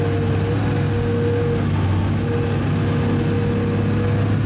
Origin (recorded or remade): recorded